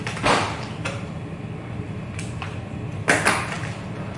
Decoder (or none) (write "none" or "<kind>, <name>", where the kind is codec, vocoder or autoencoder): none